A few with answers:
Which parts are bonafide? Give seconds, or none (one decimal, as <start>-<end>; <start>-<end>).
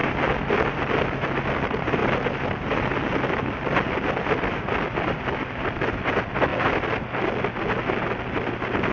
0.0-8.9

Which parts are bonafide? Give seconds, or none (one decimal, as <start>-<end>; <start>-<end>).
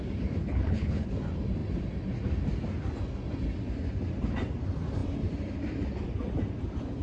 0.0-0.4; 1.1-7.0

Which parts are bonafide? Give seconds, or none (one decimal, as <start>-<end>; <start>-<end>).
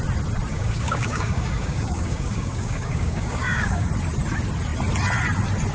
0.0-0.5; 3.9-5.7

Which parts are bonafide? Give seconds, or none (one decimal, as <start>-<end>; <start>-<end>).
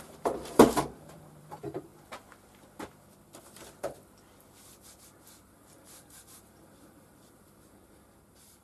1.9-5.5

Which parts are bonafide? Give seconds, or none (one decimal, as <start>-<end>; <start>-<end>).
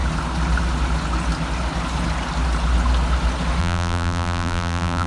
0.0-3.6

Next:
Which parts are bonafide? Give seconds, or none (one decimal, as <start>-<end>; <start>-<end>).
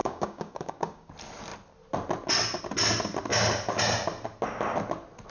1.1-5.3